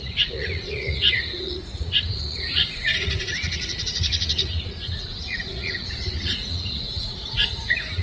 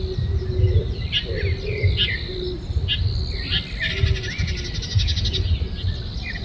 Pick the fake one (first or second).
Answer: first